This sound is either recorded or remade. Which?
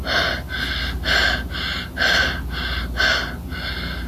recorded